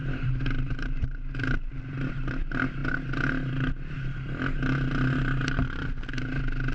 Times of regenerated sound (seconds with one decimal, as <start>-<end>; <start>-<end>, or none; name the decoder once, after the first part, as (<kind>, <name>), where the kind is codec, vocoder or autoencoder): 0.0-2.1 (vocoder, BigVGAN v2)